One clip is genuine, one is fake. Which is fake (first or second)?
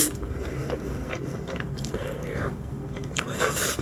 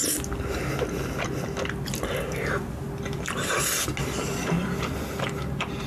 first